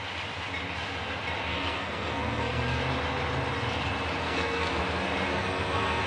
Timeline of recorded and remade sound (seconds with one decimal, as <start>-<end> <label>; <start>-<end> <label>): 0.0-1.5 recorded; 1.5-2.8 remade; 2.8-4.2 recorded; 4.2-4.8 remade; 4.8-5.3 recorded; 5.3-6.1 remade